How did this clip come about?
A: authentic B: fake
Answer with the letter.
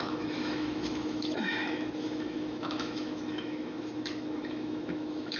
B